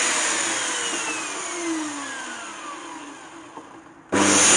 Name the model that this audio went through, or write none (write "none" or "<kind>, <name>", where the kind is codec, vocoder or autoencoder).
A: none